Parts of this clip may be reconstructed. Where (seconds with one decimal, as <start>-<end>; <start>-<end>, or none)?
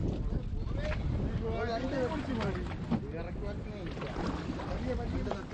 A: none